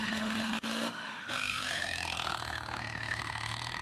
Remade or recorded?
remade